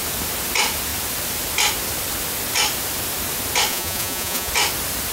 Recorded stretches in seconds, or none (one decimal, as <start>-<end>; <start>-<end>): 0.0-3.7; 4.5-5.1